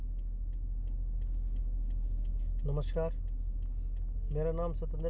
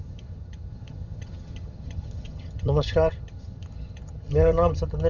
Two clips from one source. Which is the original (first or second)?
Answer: first